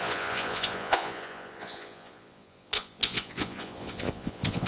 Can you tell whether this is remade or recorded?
remade